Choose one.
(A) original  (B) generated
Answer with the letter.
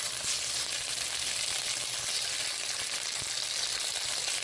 A